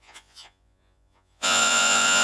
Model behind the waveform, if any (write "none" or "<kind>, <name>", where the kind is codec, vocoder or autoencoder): vocoder, Vocos